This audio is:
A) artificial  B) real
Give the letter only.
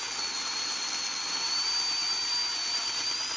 B